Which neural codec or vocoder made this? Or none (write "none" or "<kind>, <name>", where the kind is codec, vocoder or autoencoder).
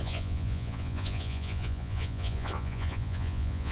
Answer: vocoder, Vocos